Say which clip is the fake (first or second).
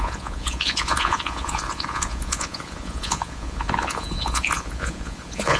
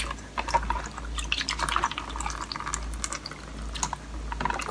first